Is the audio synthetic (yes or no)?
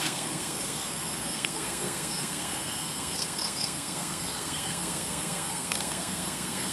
yes